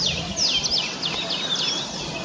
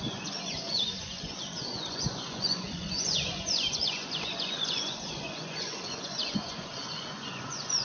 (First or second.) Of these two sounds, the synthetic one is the second